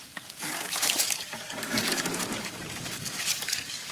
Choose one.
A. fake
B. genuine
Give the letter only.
A